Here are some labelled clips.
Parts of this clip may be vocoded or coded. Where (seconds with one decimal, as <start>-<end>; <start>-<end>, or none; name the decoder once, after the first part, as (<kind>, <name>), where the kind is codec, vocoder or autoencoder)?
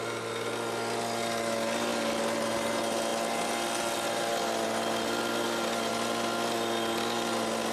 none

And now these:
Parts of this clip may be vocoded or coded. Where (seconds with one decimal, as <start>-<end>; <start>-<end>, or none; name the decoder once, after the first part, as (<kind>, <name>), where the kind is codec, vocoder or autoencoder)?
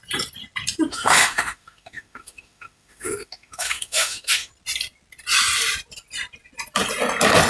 0.9-4.5 (autoencoder, DAC-VAE)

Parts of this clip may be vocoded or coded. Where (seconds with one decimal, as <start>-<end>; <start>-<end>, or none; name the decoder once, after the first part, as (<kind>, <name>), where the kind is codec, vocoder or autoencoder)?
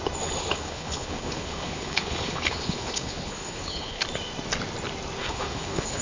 0.4-4.0 (codec, HILCodec); 5.2-6.0